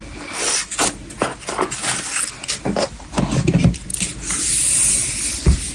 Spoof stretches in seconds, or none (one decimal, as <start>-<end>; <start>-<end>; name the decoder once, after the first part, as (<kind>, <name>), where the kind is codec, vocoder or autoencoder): none

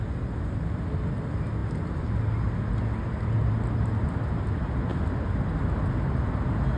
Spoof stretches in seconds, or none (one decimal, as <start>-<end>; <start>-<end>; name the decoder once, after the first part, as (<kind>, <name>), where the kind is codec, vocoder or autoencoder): none

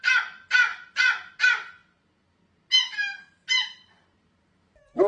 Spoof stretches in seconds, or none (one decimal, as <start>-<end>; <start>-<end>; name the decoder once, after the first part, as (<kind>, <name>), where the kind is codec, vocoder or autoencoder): none